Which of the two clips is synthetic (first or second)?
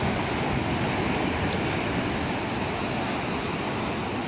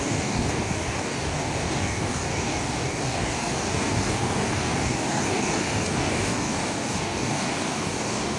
second